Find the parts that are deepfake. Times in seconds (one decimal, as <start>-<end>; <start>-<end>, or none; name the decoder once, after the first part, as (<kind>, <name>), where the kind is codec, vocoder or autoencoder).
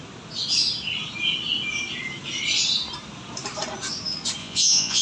4.4-5.0 (vocoder, Vocos)